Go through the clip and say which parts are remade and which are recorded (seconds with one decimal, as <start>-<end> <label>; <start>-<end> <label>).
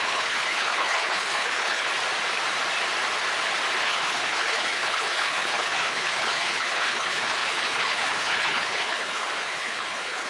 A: 0.0-1.9 remade; 1.9-3.8 recorded; 3.8-10.3 remade